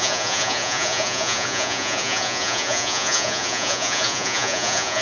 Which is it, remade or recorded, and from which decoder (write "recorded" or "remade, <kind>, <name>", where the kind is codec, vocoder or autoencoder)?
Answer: remade, vocoder, Vocos